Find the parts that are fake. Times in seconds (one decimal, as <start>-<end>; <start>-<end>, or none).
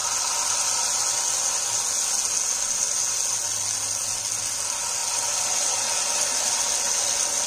none